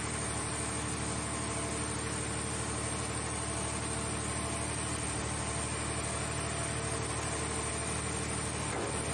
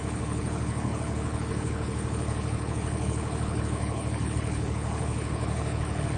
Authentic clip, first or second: first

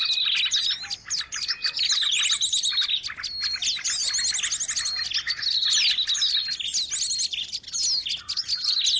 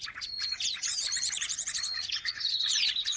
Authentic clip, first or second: first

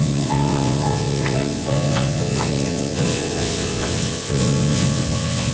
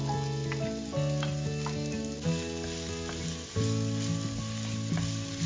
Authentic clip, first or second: second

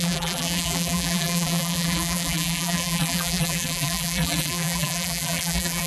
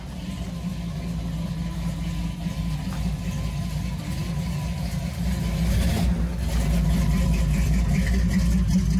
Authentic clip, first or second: second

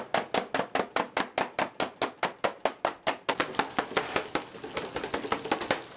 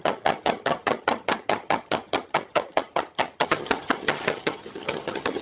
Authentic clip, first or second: first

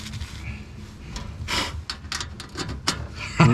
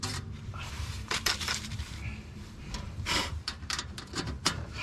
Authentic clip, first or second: first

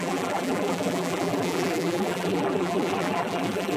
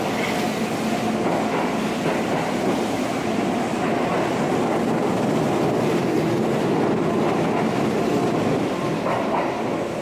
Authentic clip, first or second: second